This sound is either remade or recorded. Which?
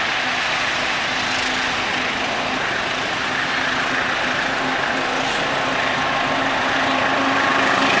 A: recorded